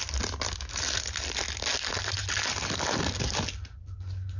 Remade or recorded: recorded